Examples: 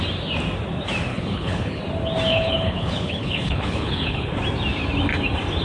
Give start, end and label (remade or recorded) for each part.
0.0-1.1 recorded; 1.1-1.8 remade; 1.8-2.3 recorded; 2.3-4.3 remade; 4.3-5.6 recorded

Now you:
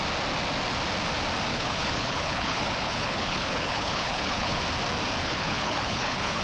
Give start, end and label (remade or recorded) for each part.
0.0-1.5 recorded; 1.5-4.6 remade; 4.6-5.2 recorded; 5.2-6.4 remade